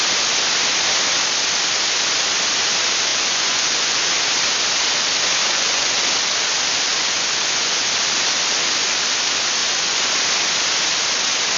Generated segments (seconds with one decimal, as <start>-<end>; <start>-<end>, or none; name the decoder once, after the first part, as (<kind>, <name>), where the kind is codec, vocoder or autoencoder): 3.1-4.1 (vocoder, Vocos); 5.4-6.0; 6.9-7.9; 9.6-10.1